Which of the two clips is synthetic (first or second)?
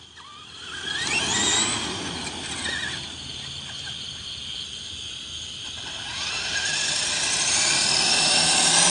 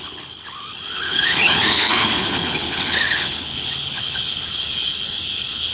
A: second